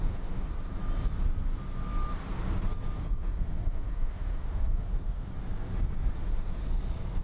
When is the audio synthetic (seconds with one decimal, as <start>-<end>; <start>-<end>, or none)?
0.0-0.7; 3.0-5.3; 6.1-6.6